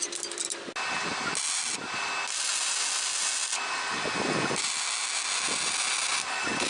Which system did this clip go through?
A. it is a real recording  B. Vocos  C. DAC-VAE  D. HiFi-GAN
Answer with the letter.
A